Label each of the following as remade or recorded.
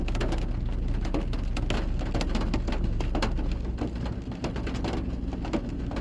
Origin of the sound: recorded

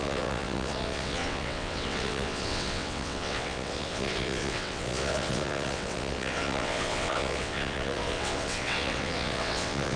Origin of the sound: remade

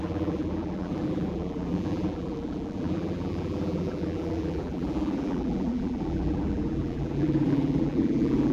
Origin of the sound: remade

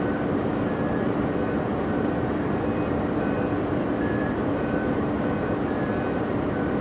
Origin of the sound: remade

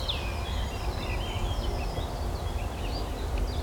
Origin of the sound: recorded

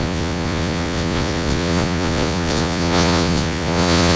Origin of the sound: remade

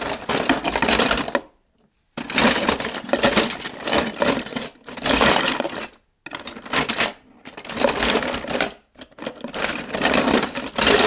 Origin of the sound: recorded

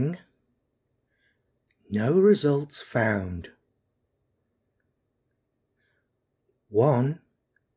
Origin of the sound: recorded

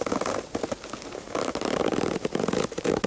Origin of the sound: remade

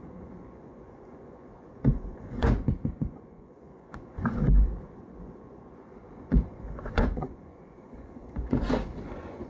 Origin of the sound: remade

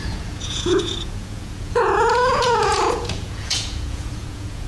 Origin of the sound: remade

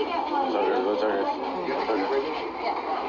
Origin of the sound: recorded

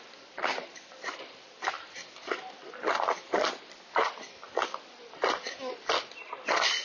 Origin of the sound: recorded